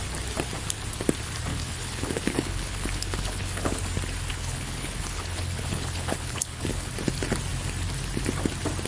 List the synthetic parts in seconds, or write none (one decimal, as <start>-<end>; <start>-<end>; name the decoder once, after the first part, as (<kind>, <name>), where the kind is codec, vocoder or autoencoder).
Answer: 1.5-3.8 (codec, HILCodec); 4.3-6.9